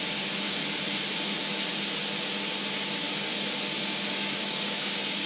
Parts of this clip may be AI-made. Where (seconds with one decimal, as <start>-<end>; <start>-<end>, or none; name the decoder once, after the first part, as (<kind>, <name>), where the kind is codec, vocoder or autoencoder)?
0.0-0.6 (codec, DAC); 3.8-5.3

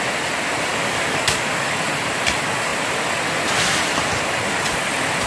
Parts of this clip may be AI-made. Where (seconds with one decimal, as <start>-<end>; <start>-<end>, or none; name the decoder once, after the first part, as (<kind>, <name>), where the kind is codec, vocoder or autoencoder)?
0.7-1.7 (codec, DAC)

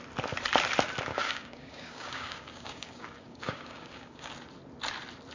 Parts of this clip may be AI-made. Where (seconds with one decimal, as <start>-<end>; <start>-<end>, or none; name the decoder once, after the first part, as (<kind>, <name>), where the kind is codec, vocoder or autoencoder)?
1.1-4.3 (codec, DAC)

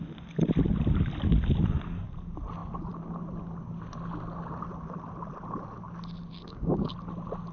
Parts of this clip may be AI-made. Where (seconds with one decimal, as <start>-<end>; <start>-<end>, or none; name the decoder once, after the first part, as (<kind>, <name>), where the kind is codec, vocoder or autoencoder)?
6.3-6.9 (codec, DAC)

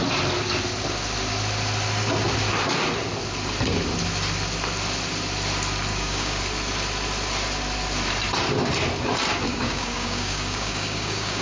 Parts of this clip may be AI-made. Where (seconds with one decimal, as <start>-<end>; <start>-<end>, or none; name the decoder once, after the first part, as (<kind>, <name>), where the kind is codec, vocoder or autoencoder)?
5.9-6.4 (codec, DAC); 9.5-11.4

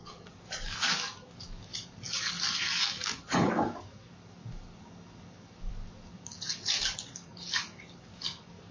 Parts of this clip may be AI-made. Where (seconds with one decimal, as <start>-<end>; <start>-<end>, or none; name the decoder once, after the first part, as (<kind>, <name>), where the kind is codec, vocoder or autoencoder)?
0.0-8.7 (codec, DAC)